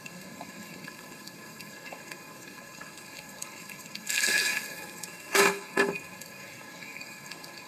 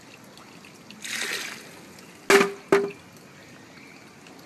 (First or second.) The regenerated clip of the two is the first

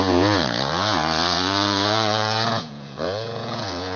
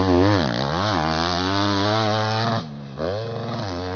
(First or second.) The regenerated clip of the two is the first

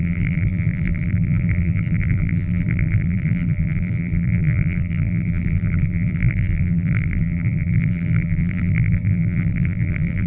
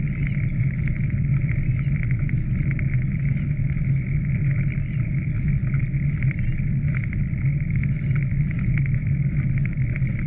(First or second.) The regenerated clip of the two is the first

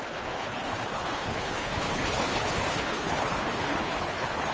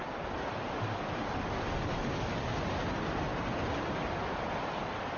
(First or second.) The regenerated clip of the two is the first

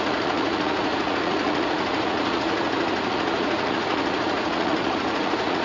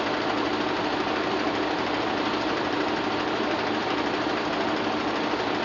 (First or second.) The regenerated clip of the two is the first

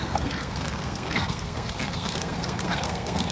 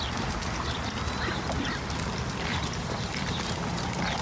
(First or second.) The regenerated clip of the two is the first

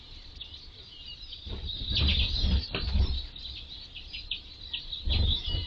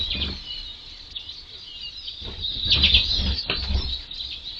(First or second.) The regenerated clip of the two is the first